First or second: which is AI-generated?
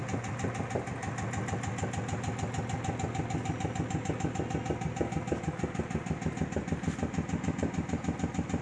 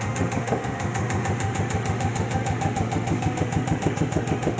second